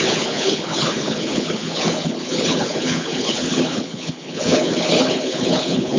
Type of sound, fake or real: fake